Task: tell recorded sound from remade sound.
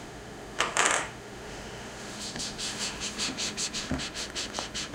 remade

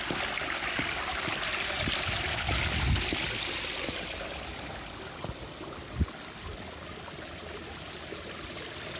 recorded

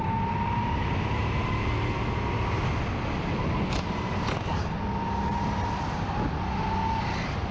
recorded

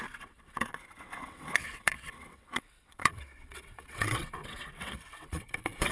remade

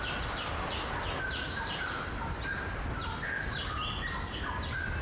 recorded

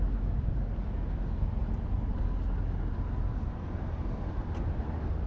recorded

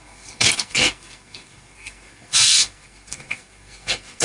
remade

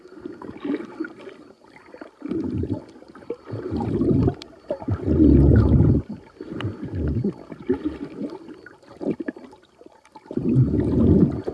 recorded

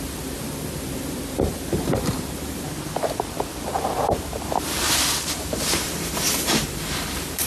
remade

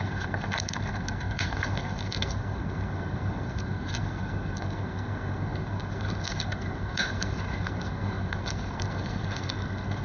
remade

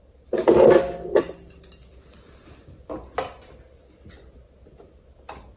recorded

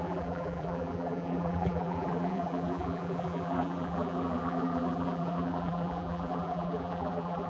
remade